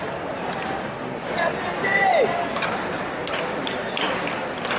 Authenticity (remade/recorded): recorded